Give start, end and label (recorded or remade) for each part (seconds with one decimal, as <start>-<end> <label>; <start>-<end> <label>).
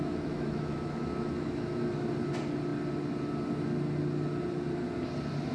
0.0-2.1 remade; 2.1-5.5 recorded